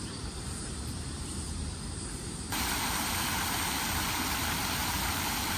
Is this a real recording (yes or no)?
no